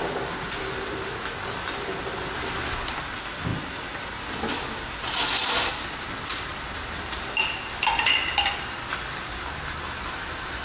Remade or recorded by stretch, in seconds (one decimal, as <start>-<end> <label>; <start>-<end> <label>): 0.0-6.5 recorded; 6.5-7.6 remade; 7.6-10.6 recorded